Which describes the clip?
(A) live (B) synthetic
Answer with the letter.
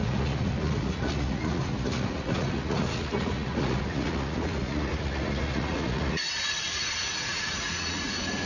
B